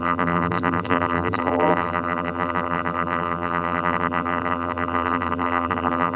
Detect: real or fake fake